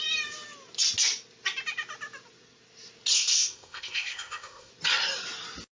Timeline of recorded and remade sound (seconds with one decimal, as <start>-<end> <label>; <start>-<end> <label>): 0.0-3.1 recorded; 3.1-4.7 remade; 4.7-5.7 recorded